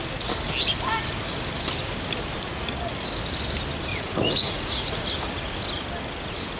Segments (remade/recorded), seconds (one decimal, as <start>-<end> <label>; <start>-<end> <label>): 0.0-3.9 recorded; 3.9-5.0 remade; 5.0-6.6 recorded